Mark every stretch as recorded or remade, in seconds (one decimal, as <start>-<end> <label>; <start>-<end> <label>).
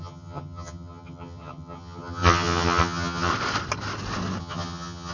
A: 0.0-3.3 remade; 3.3-4.4 recorded; 4.4-5.1 remade